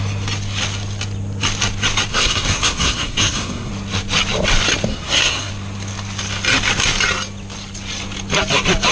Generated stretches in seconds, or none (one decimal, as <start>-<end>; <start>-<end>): 2.1-3.7; 4.9-5.5